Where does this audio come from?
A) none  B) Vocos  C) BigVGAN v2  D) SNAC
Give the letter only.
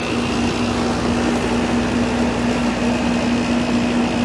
A